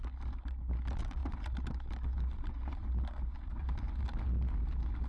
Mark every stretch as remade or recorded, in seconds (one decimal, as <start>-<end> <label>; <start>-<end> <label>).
0.0-5.1 recorded

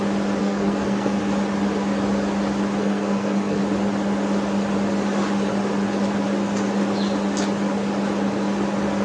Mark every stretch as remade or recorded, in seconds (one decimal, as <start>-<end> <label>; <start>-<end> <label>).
0.0-0.4 recorded; 0.4-1.2 remade; 1.2-2.8 recorded; 2.8-3.6 remade; 3.6-9.0 recorded

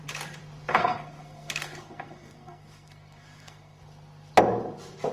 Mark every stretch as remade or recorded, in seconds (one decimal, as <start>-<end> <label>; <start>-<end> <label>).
0.0-0.7 recorded; 0.7-3.8 remade; 3.8-5.1 recorded

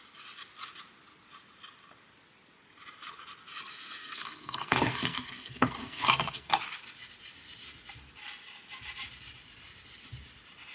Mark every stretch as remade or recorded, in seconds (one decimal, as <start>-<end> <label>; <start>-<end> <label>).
0.0-4.0 recorded; 4.0-6.6 remade; 6.6-10.7 recorded

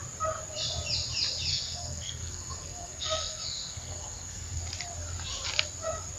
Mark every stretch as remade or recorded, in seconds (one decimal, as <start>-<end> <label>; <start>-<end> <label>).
0.0-1.5 recorded; 1.5-4.6 remade; 4.6-6.2 recorded

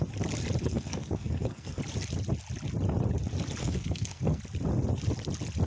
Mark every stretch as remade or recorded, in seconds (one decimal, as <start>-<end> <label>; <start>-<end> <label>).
0.0-0.6 recorded; 0.6-1.8 remade; 1.8-3.6 recorded; 3.6-4.4 remade; 4.4-5.7 recorded